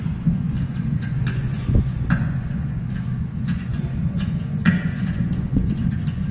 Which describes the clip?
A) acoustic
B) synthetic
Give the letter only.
B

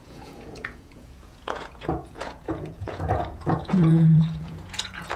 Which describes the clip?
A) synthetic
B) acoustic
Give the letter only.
A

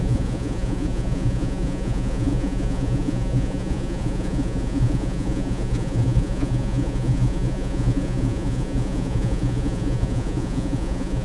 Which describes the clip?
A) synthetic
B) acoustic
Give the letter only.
A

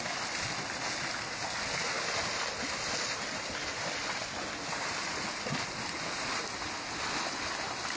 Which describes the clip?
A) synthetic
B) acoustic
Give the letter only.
B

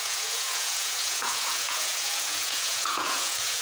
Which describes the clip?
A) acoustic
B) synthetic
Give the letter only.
B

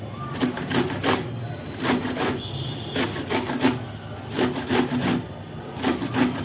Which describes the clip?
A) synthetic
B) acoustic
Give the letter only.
B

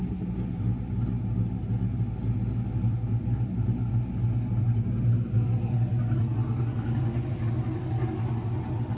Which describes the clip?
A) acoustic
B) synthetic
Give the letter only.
A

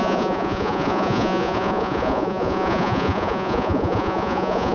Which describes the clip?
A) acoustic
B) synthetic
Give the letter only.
B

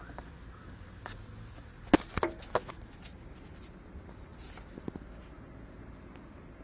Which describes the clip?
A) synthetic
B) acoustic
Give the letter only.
B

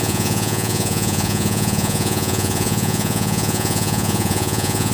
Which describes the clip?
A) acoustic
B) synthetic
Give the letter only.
B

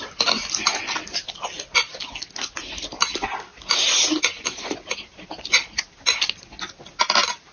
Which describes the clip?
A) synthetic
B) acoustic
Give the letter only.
B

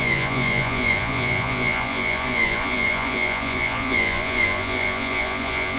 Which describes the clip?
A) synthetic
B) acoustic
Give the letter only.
A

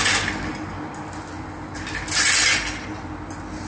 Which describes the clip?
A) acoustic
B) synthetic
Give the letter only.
A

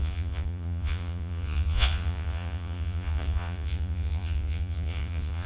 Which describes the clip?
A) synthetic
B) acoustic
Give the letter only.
A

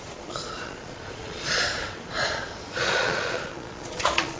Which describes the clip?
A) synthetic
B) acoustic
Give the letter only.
A